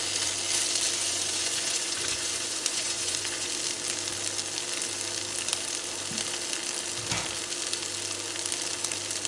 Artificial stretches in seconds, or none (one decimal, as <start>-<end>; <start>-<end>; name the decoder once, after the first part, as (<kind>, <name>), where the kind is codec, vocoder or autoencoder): 1.0-3.5 (vocoder, Vocos)